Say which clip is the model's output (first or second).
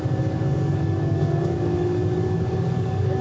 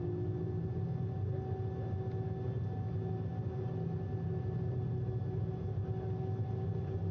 first